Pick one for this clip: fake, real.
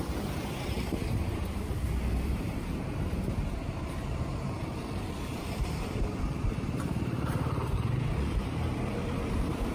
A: fake